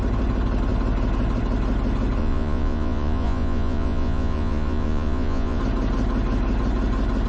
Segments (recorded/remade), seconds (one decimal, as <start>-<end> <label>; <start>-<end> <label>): 0.0-2.2 recorded; 2.2-5.6 remade; 5.6-7.3 recorded